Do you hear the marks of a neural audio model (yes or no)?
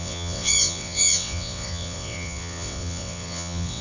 yes